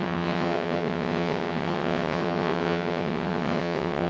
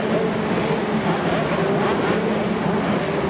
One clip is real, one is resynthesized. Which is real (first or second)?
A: second